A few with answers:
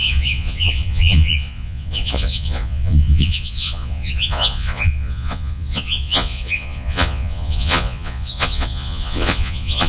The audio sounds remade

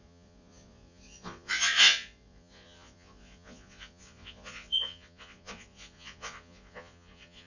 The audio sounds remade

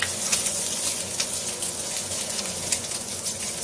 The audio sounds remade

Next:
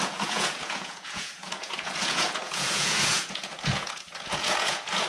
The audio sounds remade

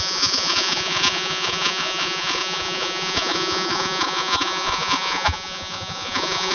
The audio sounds remade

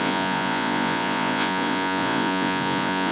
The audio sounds remade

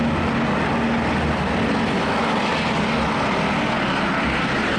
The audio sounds recorded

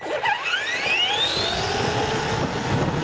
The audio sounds recorded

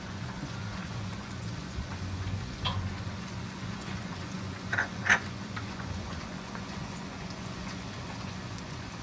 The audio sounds remade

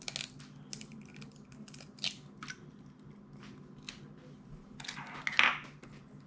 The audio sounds recorded